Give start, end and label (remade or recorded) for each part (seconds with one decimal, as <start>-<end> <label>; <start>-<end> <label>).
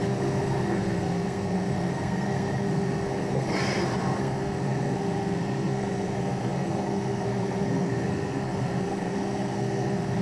0.0-3.5 remade; 3.5-4.2 recorded; 4.2-10.2 remade